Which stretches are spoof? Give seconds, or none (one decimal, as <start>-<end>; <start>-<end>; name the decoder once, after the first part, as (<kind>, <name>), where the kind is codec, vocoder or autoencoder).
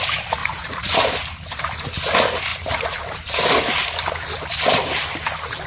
0.4-1.1 (vocoder, Vocos); 2.5-3.0